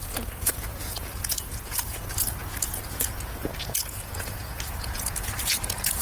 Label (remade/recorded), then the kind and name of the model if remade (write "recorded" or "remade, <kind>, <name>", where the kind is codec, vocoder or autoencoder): remade, vocoder, Vocos